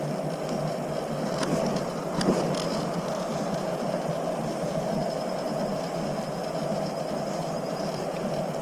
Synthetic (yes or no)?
no